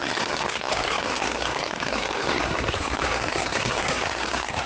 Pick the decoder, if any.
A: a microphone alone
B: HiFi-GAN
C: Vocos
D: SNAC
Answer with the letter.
D